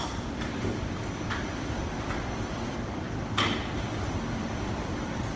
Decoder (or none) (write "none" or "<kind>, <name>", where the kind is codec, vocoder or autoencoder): vocoder, BigVGAN v2